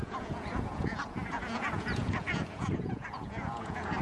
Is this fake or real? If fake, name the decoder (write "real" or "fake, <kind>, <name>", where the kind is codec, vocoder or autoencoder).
fake, vocoder, Vocos